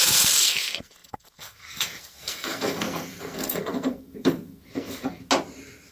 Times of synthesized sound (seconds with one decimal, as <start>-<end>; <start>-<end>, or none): 0.0-5.2